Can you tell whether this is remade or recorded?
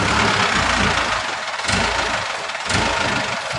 recorded